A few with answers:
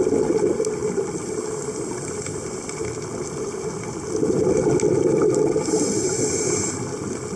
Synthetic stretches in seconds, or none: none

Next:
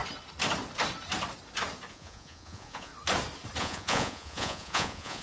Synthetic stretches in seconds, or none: 1.9-2.9; 3.6-5.2

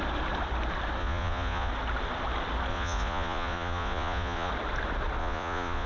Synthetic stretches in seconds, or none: 1.0-1.7; 2.7-4.5; 5.2-5.9